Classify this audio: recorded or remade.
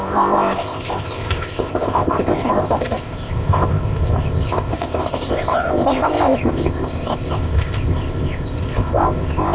remade